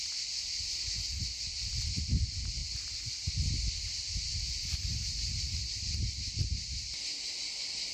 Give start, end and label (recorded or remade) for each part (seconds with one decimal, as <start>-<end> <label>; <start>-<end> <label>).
0.0-7.9 recorded